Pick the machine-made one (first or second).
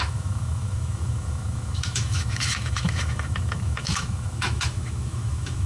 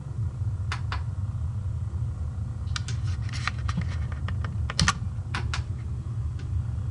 first